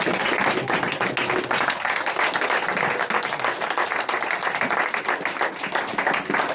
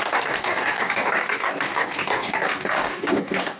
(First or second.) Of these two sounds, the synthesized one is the second